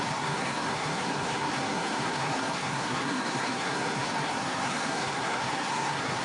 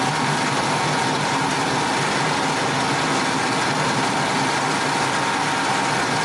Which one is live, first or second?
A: second